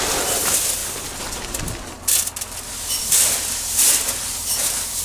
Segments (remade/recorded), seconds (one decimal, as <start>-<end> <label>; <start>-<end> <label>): 0.0-5.0 recorded